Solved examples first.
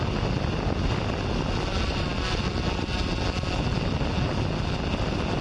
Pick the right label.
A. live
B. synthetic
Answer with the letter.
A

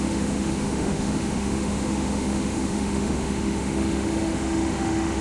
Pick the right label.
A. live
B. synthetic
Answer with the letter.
B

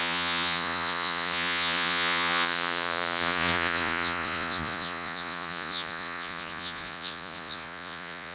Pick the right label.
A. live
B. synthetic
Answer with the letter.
B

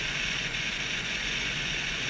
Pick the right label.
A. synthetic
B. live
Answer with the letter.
A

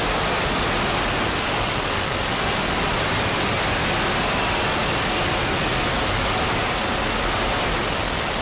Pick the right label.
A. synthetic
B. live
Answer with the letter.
B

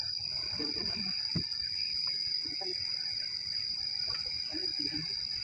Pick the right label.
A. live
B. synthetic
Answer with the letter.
B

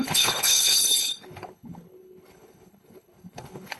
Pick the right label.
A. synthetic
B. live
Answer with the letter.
A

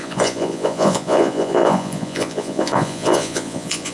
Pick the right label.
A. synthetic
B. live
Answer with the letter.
A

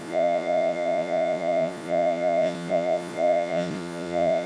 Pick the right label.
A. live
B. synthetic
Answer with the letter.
B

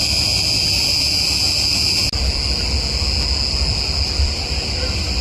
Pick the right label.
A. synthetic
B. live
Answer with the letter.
B